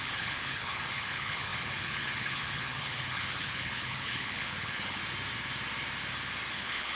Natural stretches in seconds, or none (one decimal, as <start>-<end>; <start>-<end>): 5.0-6.5